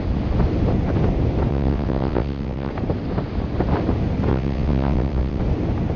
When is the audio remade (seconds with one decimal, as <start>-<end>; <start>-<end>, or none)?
1.5-2.7; 4.3-5.4